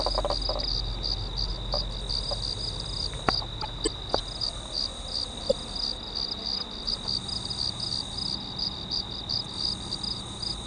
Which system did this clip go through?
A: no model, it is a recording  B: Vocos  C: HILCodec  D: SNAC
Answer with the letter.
A